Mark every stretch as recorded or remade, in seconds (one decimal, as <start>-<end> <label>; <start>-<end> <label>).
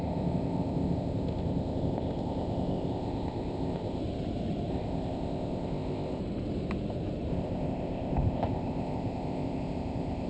0.0-4.0 remade; 4.0-4.7 recorded; 4.7-6.2 remade; 6.2-7.3 recorded; 7.3-10.3 remade